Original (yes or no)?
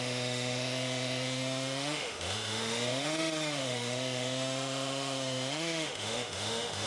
no